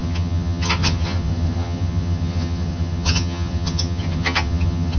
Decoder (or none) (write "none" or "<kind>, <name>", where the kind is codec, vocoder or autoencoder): vocoder, HiFi-GAN